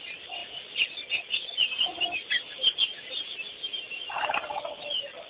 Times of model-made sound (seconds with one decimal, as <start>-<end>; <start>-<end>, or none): none